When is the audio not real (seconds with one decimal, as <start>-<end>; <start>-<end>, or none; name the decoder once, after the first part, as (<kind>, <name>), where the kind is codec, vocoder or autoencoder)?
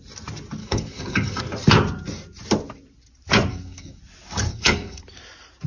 0.6-1.4 (codec, DAC); 3.5-4.0; 4.5-5.0